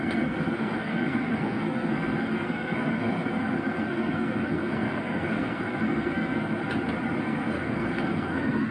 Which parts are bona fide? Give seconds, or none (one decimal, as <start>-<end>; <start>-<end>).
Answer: 6.6-7.2